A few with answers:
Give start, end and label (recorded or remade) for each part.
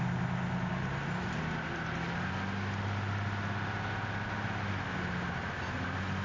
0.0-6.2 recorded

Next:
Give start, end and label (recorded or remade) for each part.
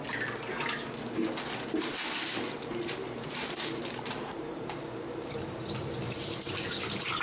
0.0-3.0 recorded; 3.0-7.2 remade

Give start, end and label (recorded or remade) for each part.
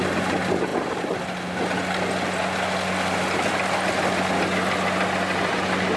0.0-6.0 recorded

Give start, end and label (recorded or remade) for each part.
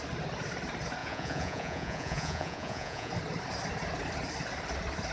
0.0-1.0 recorded; 1.0-3.1 remade; 3.1-5.1 recorded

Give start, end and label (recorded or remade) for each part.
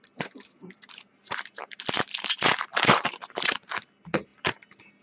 0.0-5.0 remade